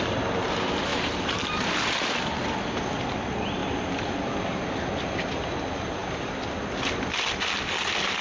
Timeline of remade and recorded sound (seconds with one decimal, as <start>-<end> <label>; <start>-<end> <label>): 0.0-0.9 recorded; 0.9-1.7 remade; 1.7-3.6 recorded; 3.6-4.8 remade; 4.8-8.2 recorded